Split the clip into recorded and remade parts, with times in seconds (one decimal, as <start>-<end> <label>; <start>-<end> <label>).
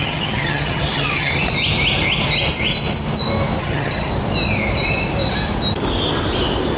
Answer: 0.0-1.3 remade; 1.3-3.6 recorded; 3.6-4.1 remade; 4.1-6.8 recorded